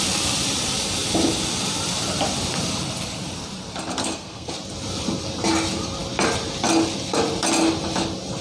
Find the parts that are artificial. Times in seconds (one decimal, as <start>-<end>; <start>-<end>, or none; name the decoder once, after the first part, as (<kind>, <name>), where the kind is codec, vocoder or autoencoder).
4.0-4.5 (codec, SNAC)